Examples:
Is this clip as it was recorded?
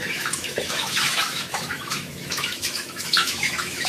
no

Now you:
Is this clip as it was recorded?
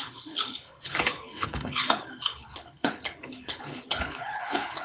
no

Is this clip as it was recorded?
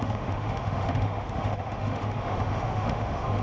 no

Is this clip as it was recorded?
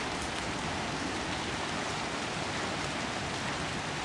yes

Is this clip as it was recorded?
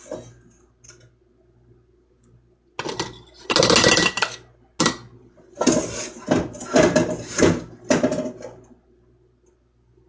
yes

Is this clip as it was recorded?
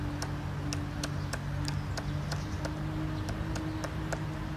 yes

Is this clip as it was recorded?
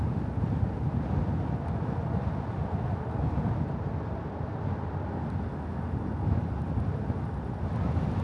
yes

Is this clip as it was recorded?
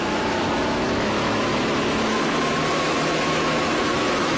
no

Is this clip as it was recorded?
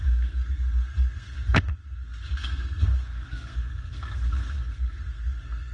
no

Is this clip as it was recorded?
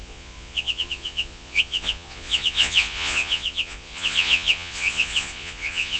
no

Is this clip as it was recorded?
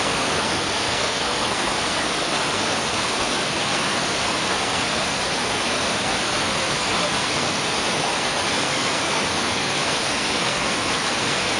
no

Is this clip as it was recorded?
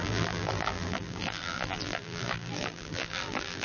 no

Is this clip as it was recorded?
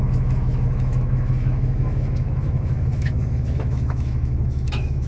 no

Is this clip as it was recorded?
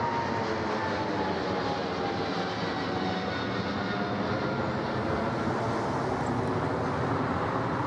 yes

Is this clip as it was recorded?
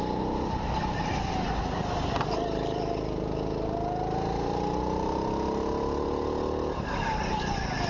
yes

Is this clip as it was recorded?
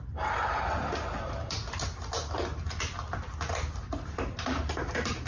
yes